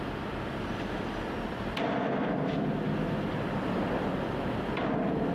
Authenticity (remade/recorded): recorded